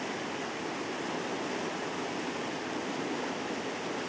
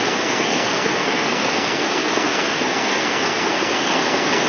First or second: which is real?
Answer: first